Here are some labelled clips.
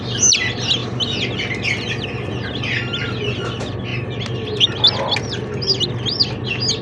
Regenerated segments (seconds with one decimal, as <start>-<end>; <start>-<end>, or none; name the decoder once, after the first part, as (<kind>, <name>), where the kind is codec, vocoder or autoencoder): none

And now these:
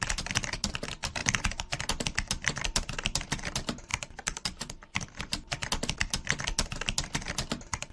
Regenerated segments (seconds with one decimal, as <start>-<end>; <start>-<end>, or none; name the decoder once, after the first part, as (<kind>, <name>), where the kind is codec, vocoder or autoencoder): none

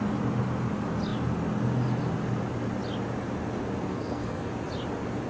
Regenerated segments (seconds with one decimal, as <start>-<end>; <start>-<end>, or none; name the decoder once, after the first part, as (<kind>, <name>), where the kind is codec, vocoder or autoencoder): 3.9-4.5 (codec, SNAC)

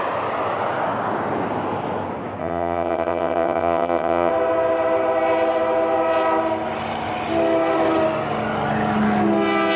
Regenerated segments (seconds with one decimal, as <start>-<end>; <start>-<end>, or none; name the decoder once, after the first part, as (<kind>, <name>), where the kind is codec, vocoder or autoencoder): 2.4-4.3 (vocoder, HiFi-GAN)

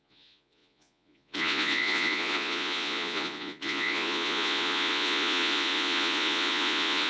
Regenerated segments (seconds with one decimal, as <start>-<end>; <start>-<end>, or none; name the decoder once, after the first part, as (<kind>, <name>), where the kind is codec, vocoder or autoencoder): 0.0-7.1 (vocoder, Vocos)

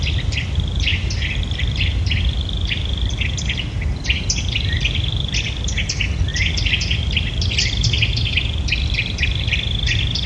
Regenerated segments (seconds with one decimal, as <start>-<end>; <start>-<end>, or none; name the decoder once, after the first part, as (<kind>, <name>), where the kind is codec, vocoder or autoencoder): none